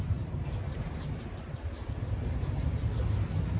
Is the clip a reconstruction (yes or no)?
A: yes